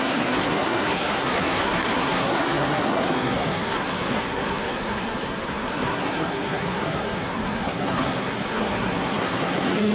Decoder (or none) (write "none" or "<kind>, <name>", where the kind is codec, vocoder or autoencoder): codec, SNAC